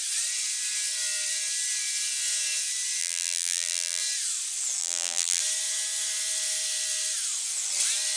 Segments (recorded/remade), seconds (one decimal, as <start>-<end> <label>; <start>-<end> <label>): 0.0-3.0 recorded; 3.0-4.0 remade; 4.0-4.8 recorded; 4.8-5.4 remade; 5.4-8.2 recorded